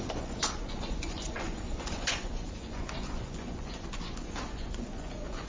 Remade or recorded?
remade